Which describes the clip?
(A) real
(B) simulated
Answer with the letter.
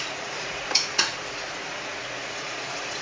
B